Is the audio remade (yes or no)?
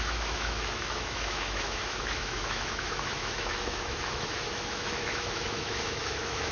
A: yes